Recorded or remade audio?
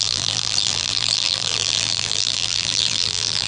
remade